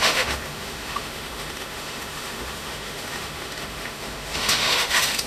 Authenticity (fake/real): fake